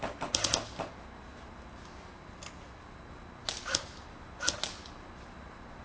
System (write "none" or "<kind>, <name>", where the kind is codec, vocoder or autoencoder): none